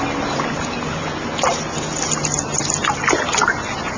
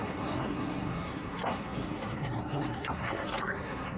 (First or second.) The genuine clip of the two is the first